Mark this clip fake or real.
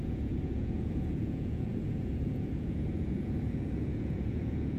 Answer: fake